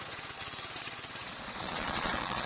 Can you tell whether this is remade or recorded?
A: remade